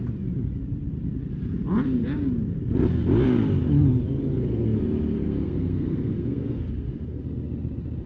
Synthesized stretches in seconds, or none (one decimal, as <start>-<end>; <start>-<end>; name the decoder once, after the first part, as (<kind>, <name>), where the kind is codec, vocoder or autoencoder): 4.3-7.2 (codec, SNAC)